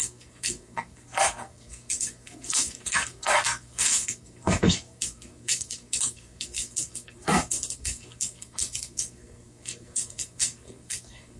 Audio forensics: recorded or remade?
remade